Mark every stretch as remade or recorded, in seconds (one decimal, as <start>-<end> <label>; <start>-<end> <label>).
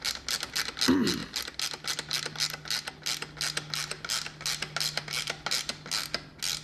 0.0-6.6 recorded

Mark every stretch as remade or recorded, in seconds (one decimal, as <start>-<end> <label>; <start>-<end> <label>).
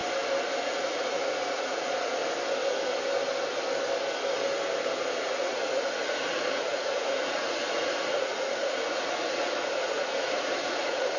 0.0-0.6 recorded; 0.6-2.2 remade; 2.2-5.2 recorded; 5.2-11.2 remade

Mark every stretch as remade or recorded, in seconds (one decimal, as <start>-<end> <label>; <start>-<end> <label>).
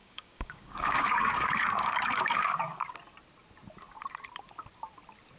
0.0-2.8 remade; 2.8-5.4 recorded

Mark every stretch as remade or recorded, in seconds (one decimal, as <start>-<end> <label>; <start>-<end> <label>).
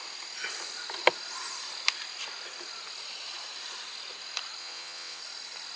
0.0-4.6 recorded; 4.6-5.2 remade; 5.2-5.8 recorded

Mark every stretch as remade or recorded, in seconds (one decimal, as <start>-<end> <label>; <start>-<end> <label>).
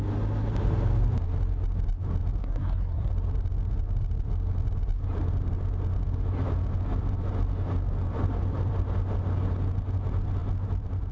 0.0-2.4 recorded; 2.4-3.1 remade; 3.1-11.1 recorded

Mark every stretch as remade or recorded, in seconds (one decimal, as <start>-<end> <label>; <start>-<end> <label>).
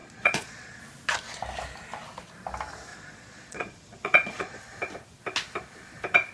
0.0-0.8 remade; 0.8-2.9 recorded; 2.9-4.6 remade; 4.6-6.3 recorded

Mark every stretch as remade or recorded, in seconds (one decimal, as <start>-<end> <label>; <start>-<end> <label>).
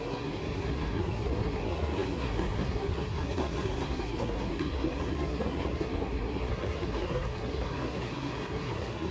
0.0-9.1 remade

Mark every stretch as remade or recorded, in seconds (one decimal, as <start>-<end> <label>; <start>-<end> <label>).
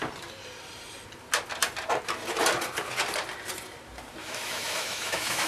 0.0-4.2 recorded; 4.2-5.5 remade